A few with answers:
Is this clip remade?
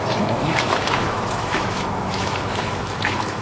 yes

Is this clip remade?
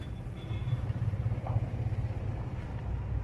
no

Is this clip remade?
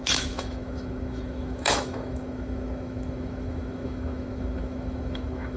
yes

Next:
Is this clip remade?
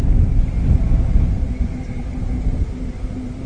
no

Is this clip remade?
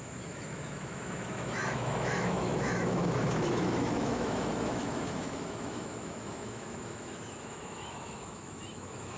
yes